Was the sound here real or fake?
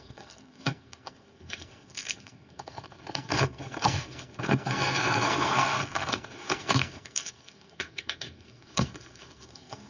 fake